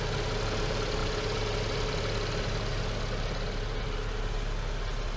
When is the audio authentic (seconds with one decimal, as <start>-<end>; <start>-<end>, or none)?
0.0-5.2